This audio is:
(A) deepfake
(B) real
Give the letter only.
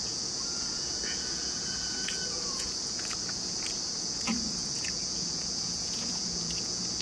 A